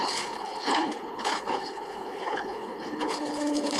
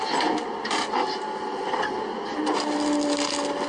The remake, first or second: first